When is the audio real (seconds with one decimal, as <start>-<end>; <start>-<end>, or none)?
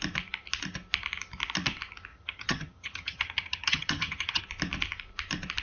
0.0-2.1; 4.4-5.6